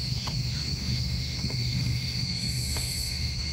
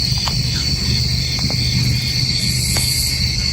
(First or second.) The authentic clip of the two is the second